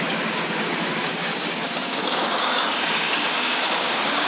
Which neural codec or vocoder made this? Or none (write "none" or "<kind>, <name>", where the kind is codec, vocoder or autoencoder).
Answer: codec, DAC